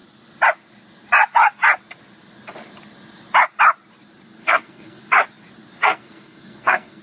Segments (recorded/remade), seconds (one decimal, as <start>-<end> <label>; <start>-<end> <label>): 0.0-4.4 recorded; 4.4-5.0 remade; 5.0-5.8 recorded; 5.8-7.0 remade